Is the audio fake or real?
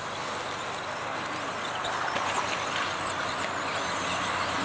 real